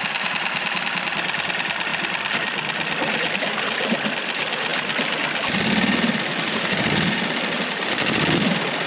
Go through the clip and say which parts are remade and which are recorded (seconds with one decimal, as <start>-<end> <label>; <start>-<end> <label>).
0.0-8.9 recorded